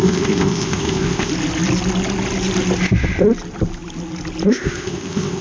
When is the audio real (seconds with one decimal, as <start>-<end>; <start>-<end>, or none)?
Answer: 1.3-4.5